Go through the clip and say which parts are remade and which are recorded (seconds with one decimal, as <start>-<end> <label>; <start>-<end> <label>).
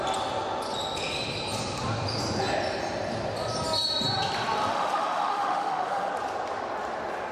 0.0-4.7 recorded; 4.7-6.1 remade; 6.1-7.3 recorded